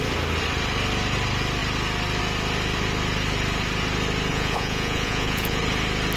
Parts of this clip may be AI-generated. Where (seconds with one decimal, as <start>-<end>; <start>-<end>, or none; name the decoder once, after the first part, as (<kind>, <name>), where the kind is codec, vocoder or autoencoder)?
4.3-5.6 (vocoder, Vocos)